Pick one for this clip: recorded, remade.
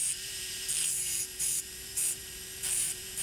remade